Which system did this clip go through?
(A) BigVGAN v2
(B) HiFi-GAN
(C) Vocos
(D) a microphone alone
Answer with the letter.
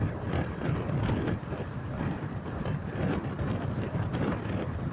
A